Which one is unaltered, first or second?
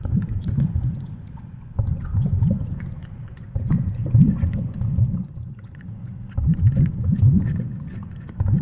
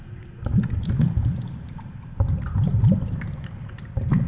second